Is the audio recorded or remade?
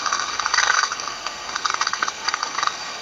remade